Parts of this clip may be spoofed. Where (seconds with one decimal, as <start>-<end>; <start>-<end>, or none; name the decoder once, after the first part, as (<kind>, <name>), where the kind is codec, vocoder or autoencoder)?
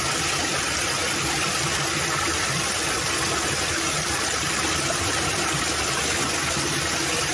none